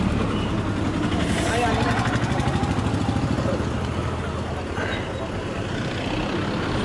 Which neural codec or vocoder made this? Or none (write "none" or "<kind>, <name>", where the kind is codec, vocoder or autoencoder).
none